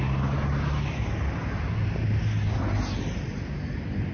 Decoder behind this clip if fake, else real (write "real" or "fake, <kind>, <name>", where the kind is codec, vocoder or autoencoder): real